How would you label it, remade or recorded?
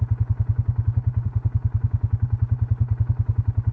recorded